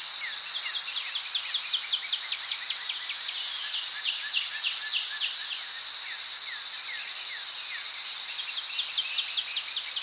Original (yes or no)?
yes